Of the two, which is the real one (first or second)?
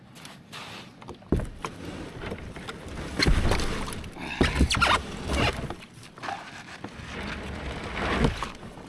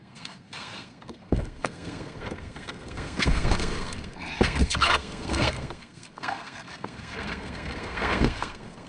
first